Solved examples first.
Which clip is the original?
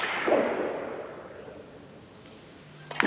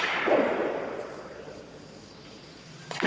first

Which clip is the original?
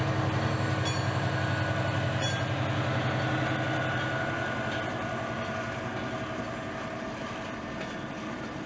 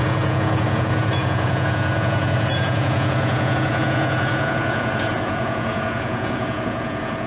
first